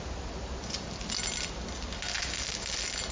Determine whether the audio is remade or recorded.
recorded